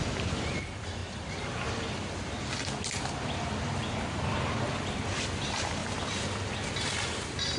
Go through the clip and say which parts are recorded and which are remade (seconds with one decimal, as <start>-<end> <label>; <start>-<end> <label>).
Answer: 0.0-1.0 remade; 1.0-3.1 recorded; 3.1-5.8 remade; 5.8-6.8 recorded; 6.8-7.6 remade